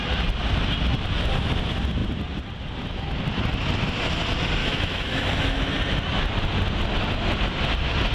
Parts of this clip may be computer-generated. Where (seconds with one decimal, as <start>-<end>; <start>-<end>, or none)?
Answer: 4.6-5.7